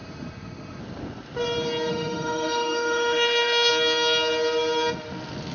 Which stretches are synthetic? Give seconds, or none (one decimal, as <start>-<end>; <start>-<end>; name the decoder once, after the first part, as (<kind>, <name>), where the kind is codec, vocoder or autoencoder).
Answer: 0.0-0.8 (autoencoder, DAC-VAE); 1.9-3.7